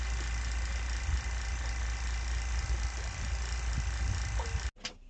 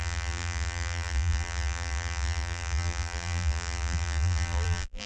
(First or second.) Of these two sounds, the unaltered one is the first